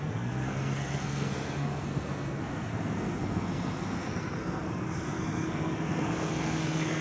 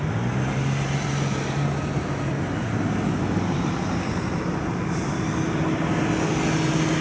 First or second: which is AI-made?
first